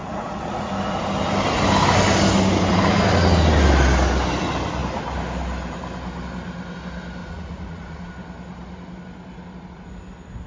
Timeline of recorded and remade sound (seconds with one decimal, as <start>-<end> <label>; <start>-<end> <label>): 0.0-0.7 remade; 0.7-7.2 recorded; 7.2-8.1 remade; 8.1-10.5 recorded